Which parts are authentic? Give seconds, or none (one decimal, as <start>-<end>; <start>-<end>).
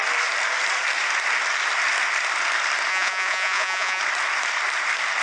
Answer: 0.0-2.9; 4.0-5.2